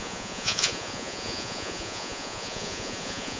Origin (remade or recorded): remade